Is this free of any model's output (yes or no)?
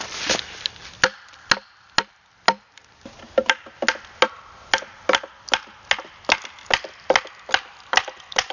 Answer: yes